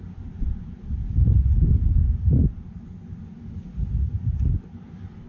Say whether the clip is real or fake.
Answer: fake